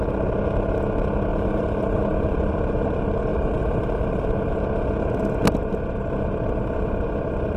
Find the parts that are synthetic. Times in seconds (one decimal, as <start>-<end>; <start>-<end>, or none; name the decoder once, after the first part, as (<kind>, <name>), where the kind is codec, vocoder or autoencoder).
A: 1.3-2.0 (vocoder, BigVGAN v2); 3.3-4.5